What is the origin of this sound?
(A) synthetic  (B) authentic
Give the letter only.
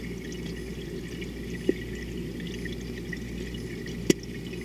B